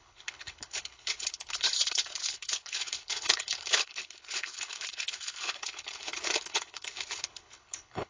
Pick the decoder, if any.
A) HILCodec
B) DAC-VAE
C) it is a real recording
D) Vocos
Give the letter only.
A